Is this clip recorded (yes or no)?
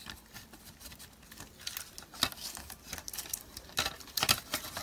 yes